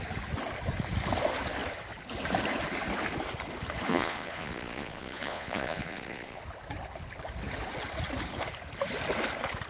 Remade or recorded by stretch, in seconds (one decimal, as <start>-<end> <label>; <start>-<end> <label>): 0.0-3.9 recorded; 3.9-6.4 remade; 6.4-9.7 recorded